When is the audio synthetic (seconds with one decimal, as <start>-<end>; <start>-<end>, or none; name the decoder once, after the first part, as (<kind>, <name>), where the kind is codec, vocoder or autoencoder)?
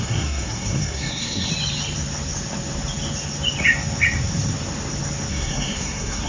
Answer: 0.0-1.5 (codec, SNAC); 5.3-6.3